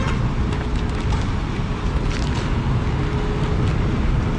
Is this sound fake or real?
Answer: real